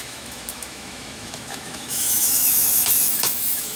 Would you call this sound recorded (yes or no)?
no